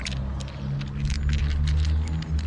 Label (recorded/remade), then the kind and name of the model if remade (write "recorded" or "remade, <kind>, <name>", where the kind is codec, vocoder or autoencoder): recorded